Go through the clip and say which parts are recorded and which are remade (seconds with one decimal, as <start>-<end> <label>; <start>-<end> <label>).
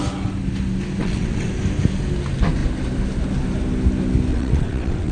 0.0-1.0 recorded; 1.0-1.5 remade; 1.5-4.3 recorded; 4.3-5.1 remade